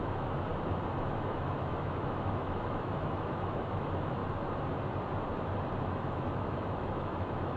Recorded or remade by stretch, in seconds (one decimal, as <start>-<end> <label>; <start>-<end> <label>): 0.0-0.5 remade; 0.5-1.0 recorded; 1.0-4.2 remade; 4.2-5.8 recorded; 5.8-7.6 remade